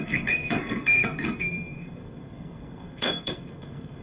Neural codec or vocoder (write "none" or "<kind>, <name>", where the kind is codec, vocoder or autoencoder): codec, SNAC